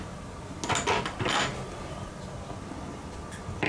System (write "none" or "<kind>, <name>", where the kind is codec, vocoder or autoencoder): none